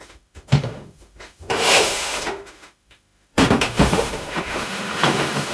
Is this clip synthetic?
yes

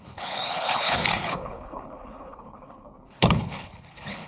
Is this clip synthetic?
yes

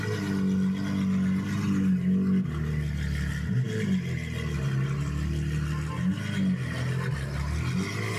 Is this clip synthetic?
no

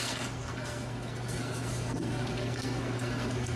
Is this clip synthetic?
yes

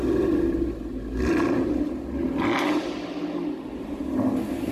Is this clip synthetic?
no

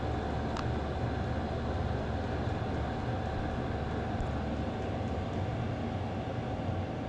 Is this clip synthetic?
no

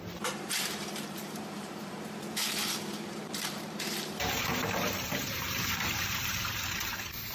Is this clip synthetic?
yes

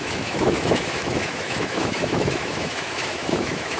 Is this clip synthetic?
yes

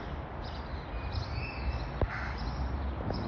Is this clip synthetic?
no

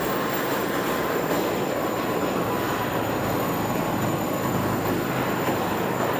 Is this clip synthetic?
no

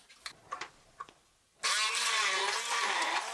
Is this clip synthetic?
no